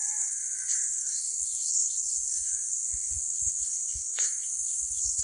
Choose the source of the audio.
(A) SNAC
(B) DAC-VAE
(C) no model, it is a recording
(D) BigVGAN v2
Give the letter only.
A